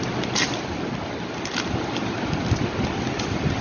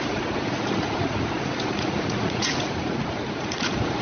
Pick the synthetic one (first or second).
second